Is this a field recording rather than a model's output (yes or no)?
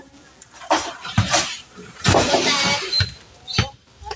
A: no